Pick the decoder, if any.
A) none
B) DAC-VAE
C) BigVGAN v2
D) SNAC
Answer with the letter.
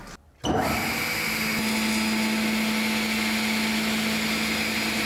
A